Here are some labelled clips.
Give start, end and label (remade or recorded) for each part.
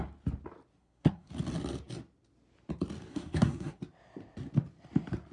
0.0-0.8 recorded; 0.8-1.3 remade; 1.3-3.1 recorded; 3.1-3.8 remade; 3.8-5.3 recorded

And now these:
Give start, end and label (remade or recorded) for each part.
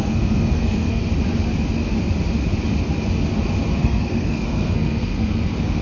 0.0-1.1 remade; 1.1-3.8 recorded; 3.8-5.8 remade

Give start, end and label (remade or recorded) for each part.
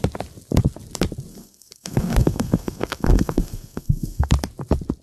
0.0-1.3 recorded; 1.3-4.3 remade; 4.3-5.0 recorded